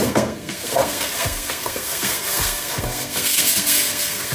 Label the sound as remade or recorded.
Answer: remade